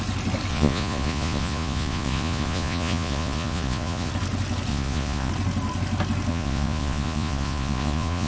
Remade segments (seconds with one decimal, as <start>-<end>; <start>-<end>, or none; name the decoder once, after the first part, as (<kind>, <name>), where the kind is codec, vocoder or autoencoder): 0.5-4.1 (vocoder, Vocos); 4.7-5.3; 6.3-8.3